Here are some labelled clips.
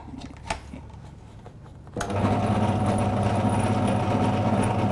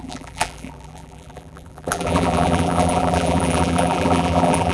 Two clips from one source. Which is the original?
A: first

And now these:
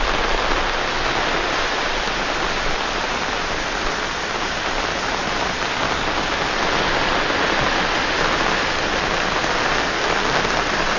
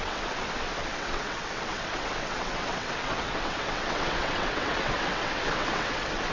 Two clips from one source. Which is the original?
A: first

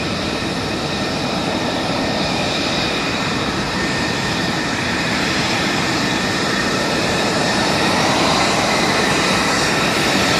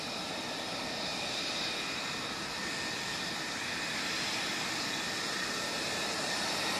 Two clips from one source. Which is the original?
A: second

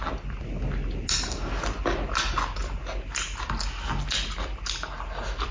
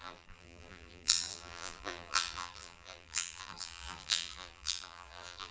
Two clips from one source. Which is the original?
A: first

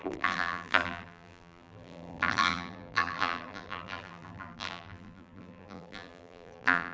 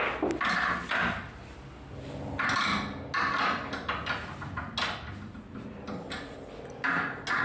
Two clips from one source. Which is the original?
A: second